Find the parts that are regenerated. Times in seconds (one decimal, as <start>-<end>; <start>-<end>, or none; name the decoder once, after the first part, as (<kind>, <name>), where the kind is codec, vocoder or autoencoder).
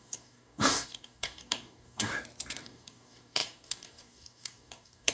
0.0-2.1 (codec, DAC); 2.6-5.1